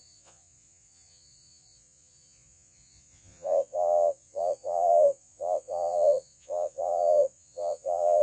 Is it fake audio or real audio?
fake